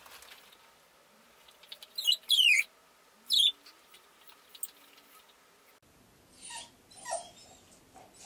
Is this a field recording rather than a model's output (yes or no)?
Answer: yes